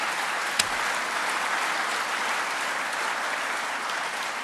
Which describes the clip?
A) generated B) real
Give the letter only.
B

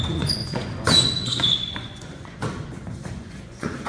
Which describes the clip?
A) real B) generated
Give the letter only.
B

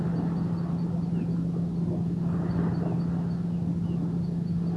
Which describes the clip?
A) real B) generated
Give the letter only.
A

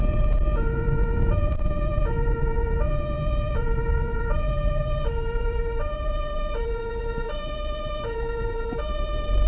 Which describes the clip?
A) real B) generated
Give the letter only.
B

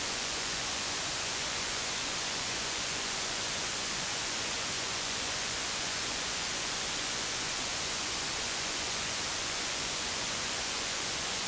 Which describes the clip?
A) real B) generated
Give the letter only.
B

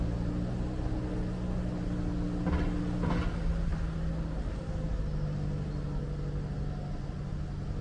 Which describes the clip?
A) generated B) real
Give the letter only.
B